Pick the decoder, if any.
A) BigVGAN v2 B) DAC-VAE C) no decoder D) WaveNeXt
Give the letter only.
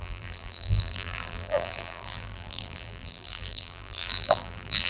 A